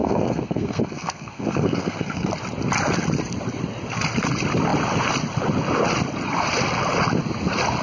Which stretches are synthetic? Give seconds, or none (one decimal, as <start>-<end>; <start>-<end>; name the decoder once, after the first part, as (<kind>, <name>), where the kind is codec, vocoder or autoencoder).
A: 0.0-2.3 (codec, SNAC)